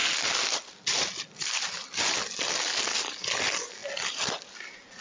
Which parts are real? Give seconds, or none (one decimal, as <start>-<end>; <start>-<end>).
0.0-5.0